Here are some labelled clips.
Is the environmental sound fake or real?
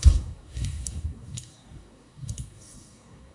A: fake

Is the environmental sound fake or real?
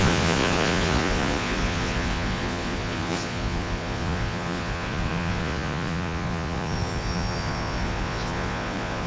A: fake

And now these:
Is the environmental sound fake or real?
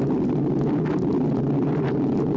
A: real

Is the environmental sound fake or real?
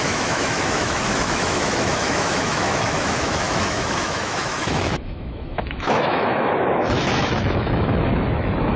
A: fake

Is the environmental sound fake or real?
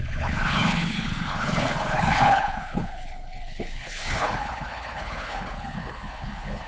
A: fake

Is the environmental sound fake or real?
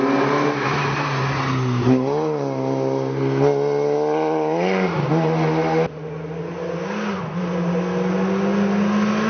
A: real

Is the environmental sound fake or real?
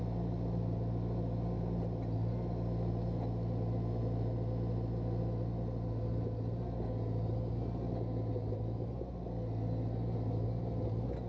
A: real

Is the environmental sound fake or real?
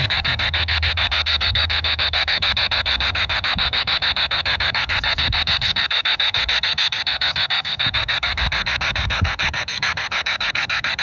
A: fake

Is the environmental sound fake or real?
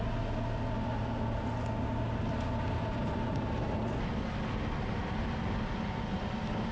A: real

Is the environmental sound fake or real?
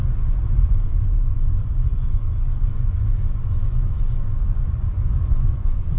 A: fake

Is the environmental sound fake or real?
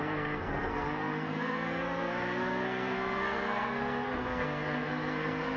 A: fake